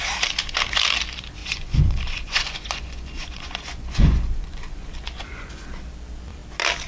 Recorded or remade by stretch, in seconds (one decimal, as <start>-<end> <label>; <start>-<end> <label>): 0.0-1.4 recorded; 1.4-5.5 remade; 5.5-6.9 recorded